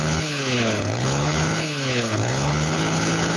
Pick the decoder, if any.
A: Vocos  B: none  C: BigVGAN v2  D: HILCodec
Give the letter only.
D